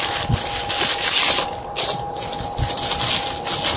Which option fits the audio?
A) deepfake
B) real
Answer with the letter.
B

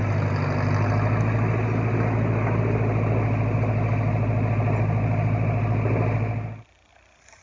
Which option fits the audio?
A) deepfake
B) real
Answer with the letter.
B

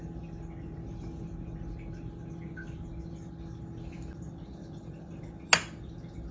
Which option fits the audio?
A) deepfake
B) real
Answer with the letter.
B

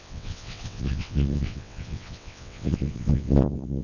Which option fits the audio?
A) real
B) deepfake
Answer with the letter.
B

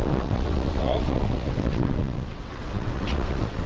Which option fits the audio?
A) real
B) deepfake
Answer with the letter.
B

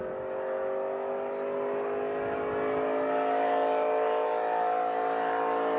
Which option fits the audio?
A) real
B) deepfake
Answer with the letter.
A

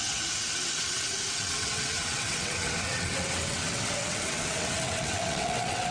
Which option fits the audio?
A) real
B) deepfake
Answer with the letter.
B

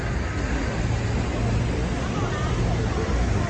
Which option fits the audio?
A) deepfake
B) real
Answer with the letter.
B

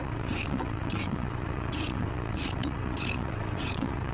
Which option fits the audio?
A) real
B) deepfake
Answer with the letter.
B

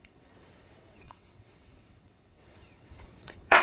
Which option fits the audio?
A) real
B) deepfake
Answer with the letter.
B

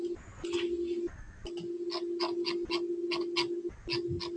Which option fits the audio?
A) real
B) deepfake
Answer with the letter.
A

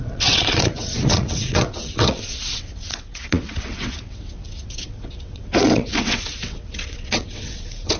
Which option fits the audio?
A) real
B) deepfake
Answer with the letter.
B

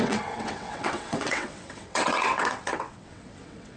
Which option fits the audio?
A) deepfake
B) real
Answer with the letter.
A